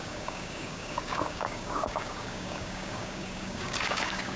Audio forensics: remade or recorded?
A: remade